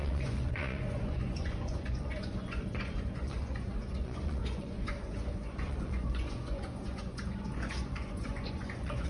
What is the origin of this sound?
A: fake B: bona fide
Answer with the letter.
A